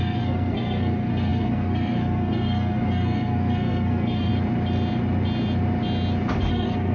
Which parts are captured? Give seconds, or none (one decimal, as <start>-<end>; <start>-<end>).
4.3-6.5